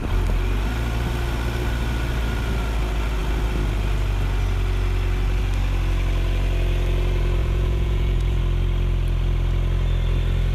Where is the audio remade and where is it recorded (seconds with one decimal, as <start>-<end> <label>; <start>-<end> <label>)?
0.0-7.4 recorded; 7.4-8.4 remade; 8.4-10.5 recorded